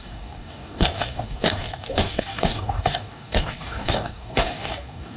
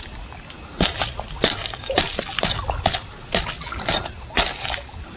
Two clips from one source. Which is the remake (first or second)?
first